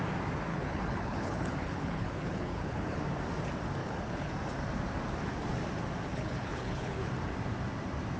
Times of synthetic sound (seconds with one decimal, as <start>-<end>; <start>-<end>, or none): 0.5-3.0; 3.8-4.3; 6.1-7.1